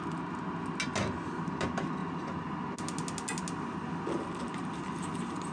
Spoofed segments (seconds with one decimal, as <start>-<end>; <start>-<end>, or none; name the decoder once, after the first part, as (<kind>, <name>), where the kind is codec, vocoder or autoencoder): none